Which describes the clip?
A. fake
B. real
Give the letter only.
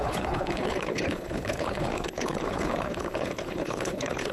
A